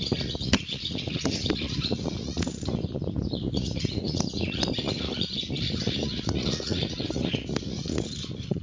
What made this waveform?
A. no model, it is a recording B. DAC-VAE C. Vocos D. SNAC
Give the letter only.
C